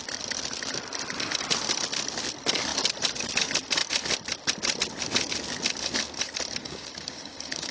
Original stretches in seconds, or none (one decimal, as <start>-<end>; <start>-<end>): 0.0-6.6